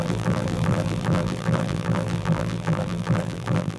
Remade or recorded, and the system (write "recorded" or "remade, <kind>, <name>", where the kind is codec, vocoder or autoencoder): remade, vocoder, BigVGAN v2